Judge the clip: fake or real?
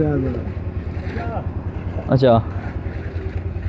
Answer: real